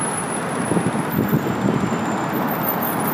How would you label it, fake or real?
real